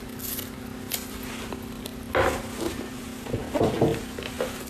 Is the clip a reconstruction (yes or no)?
no